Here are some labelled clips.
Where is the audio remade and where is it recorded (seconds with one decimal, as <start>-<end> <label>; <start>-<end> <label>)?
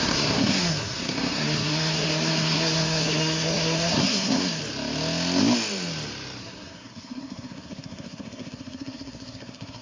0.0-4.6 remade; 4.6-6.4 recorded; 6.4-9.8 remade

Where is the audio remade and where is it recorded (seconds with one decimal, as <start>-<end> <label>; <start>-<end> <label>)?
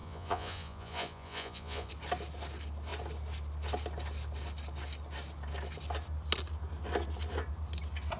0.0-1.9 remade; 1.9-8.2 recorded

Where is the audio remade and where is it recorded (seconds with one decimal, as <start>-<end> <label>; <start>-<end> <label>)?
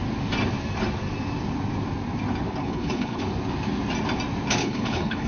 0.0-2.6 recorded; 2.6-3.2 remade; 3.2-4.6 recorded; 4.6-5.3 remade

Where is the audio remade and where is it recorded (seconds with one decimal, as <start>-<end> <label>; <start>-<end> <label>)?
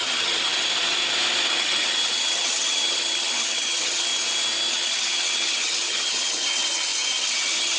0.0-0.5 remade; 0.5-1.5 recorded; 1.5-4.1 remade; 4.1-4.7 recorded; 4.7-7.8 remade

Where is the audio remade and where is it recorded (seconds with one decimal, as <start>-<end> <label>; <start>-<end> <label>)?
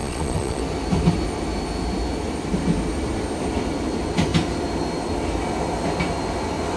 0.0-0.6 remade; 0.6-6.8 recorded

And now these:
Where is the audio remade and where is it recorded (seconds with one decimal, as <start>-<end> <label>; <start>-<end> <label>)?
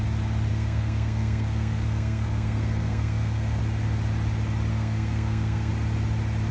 0.0-0.5 recorded; 0.5-3.6 remade; 3.6-4.7 recorded; 4.7-5.7 remade; 5.7-6.5 recorded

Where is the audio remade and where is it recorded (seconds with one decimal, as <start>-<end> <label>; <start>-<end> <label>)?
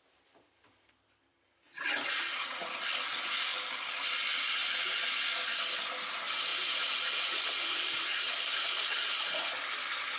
0.0-3.5 recorded; 3.5-4.0 remade; 4.0-4.6 recorded; 4.6-5.5 remade; 5.5-10.2 recorded